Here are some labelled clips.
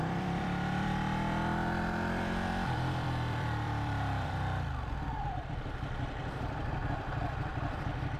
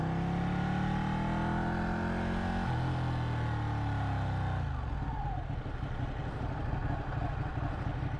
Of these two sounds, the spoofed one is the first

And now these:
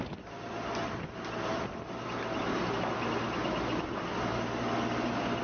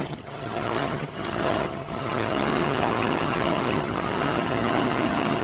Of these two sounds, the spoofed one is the second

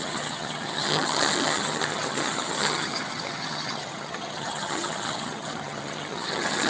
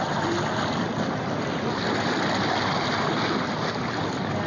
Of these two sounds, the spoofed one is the first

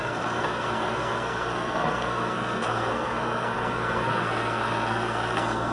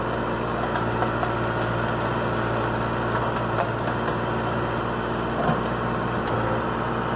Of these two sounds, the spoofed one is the first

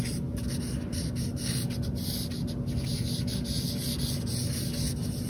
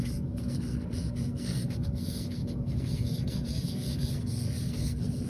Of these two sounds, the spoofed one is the second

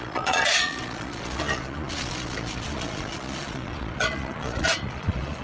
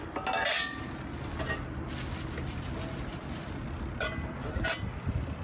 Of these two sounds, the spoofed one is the first